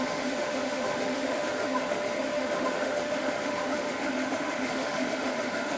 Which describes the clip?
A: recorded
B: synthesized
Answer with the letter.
B